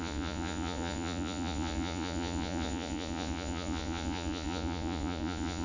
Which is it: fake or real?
fake